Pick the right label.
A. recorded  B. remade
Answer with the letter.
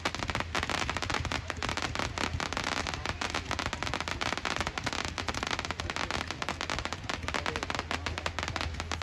A